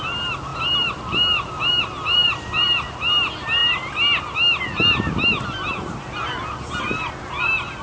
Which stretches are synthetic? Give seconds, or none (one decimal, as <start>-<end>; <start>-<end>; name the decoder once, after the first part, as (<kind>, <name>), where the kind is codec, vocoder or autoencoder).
none